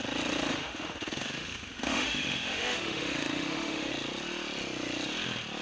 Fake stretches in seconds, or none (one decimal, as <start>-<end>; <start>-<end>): 0.5-3.9